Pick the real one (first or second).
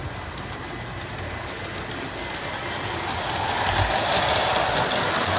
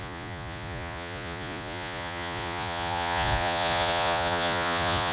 first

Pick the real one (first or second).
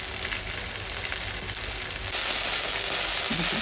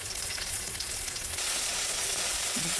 first